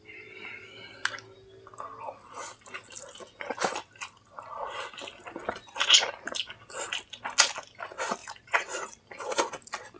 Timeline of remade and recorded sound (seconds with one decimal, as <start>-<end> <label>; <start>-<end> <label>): 0.0-8.2 recorded; 8.2-8.9 remade; 8.9-10.0 recorded